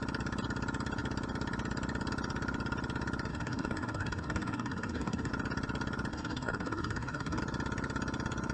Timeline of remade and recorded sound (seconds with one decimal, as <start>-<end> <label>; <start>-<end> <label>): 0.0-3.3 recorded; 3.3-5.3 remade; 5.3-6.1 recorded; 6.1-7.4 remade; 7.4-8.5 recorded